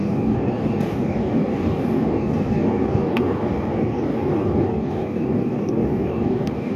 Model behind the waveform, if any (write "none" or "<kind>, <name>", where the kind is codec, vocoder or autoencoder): codec, DAC